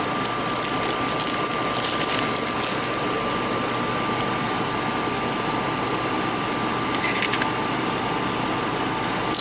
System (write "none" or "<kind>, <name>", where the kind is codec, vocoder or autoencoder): none